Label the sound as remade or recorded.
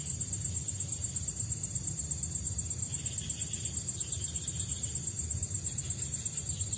recorded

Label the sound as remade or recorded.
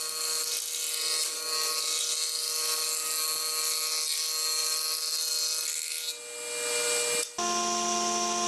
recorded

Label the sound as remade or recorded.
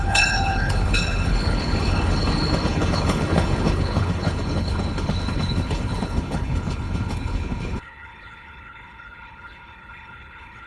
remade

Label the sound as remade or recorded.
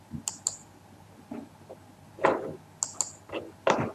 recorded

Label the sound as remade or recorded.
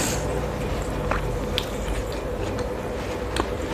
recorded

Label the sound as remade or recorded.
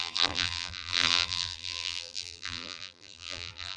remade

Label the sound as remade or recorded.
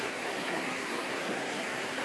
remade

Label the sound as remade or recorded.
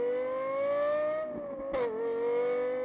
recorded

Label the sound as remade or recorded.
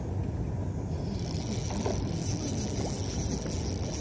recorded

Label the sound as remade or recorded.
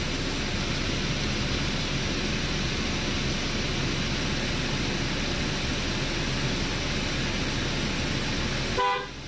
recorded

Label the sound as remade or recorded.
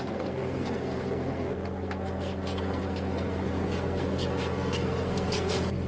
remade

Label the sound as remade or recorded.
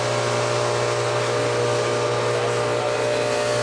recorded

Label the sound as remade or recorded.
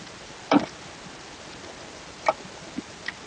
recorded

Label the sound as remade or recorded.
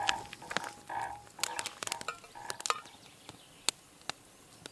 recorded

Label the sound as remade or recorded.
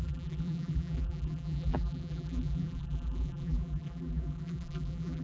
remade